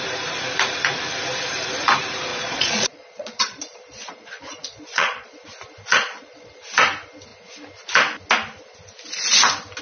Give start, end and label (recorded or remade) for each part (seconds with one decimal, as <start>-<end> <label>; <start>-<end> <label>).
0.0-2.3 recorded; 2.3-5.3 remade; 5.3-5.9 recorded; 5.9-6.5 remade; 6.5-9.8 recorded